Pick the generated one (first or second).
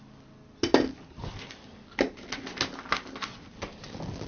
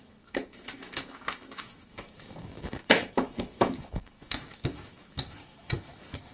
second